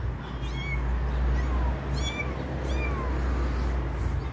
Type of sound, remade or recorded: recorded